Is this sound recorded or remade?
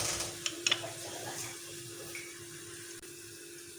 recorded